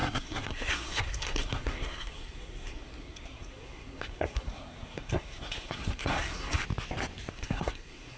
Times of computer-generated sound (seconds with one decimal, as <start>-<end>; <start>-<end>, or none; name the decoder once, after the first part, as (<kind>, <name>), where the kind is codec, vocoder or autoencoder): 0.0-6.6 (codec, SNAC); 7.3-8.2